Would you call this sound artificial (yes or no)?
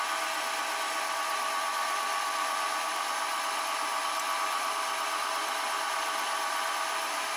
no